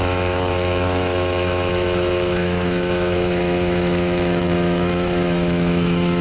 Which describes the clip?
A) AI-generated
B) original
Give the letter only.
A